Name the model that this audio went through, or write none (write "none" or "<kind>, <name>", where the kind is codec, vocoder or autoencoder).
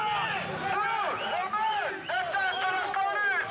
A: none